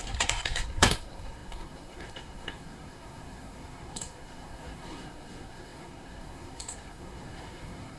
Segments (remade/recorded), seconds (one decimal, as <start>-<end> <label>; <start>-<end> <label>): 0.0-8.0 remade

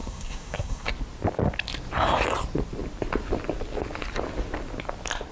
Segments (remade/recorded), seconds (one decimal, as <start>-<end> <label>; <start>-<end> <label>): 0.0-0.9 remade; 0.9-5.3 recorded

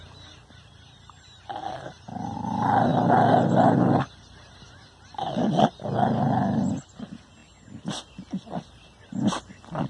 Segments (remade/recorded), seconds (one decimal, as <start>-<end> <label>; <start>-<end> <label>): 0.0-9.9 recorded

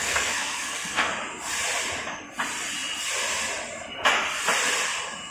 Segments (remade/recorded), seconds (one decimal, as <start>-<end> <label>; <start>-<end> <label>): 0.0-1.1 remade; 1.1-5.3 recorded